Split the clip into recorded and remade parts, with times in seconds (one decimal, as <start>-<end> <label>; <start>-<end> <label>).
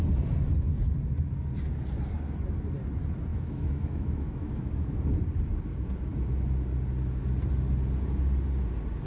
0.0-3.3 recorded; 3.3-5.0 remade; 5.0-9.1 recorded